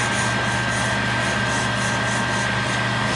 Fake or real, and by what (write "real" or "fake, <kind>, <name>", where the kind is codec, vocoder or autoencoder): real